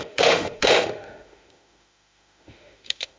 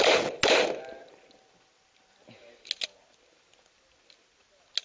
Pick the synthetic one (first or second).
first